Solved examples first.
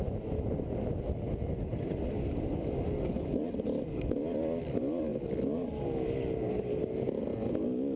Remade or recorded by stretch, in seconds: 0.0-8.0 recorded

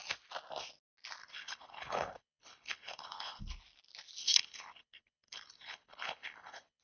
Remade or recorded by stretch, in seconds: 0.0-1.2 recorded; 1.2-3.4 remade; 3.4-4.2 recorded; 4.2-6.8 remade

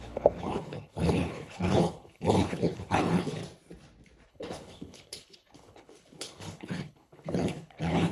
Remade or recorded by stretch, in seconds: 0.0-3.4 remade; 3.4-4.3 recorded; 4.3-8.1 remade

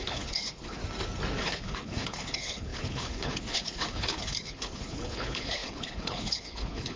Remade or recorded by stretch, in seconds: 0.0-0.8 remade; 0.8-1.4 recorded; 1.4-7.0 remade

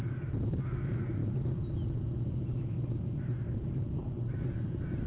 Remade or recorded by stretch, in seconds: 0.0-5.1 recorded

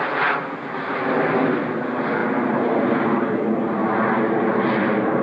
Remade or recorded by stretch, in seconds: 0.0-5.2 recorded

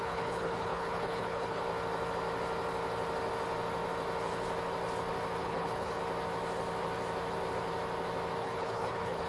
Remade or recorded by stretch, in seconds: 0.0-1.6 remade; 1.6-5.4 recorded; 5.4-6.0 remade; 6.0-8.4 recorded; 8.4-9.3 remade